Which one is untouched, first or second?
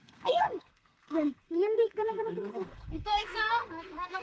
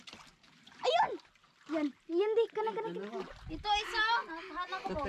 second